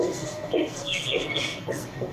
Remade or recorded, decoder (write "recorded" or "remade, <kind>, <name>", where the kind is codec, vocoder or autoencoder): remade, codec, SNAC